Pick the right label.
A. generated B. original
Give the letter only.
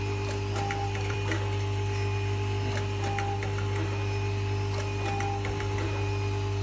B